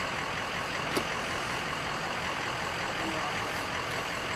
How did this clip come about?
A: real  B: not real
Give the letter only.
A